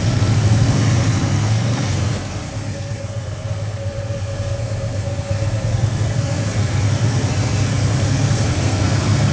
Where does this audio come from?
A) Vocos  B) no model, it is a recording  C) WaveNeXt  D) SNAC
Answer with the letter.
D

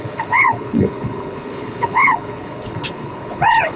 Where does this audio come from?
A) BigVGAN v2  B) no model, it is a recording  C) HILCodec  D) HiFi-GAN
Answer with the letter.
C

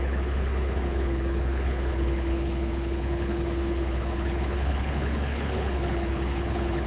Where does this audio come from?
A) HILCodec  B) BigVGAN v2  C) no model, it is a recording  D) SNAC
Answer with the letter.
A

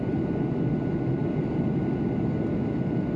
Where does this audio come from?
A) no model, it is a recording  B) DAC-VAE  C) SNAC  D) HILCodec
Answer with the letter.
A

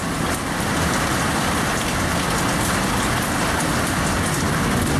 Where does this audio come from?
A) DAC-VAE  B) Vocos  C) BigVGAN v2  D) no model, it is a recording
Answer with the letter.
D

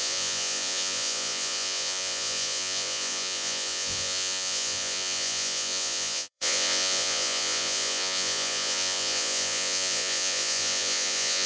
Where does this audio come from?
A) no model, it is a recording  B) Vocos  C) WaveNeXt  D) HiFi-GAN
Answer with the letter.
B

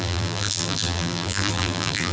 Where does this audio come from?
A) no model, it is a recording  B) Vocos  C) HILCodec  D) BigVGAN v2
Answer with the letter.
D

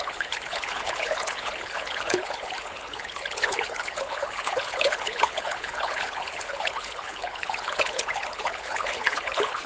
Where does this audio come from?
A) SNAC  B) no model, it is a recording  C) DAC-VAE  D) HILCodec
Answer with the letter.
D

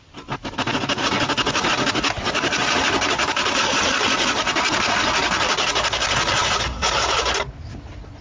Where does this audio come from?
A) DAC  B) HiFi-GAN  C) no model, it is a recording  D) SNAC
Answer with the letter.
C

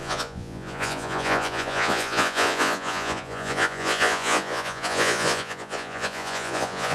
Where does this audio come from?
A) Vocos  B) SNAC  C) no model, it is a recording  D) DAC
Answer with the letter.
A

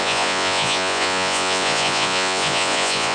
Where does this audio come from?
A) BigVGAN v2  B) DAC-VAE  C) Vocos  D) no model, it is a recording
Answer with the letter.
C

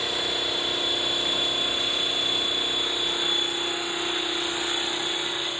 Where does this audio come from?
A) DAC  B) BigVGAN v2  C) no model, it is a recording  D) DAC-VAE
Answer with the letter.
C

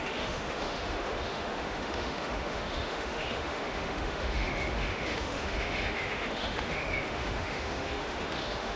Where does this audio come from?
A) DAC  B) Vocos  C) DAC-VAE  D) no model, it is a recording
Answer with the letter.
C